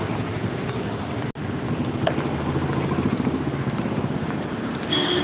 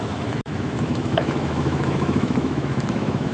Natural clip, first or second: first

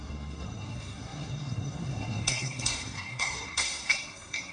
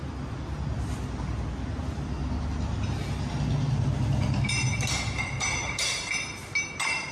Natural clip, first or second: second